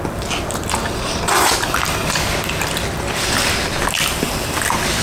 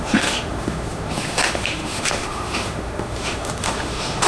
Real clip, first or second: first